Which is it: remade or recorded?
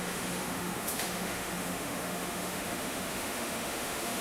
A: remade